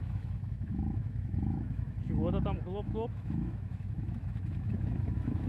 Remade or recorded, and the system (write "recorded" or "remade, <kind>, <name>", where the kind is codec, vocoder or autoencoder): remade, autoencoder, DAC-VAE